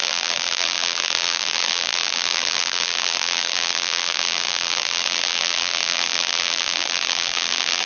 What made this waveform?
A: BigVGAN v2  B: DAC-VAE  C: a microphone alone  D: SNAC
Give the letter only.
A